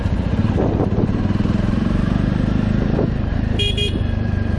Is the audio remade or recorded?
remade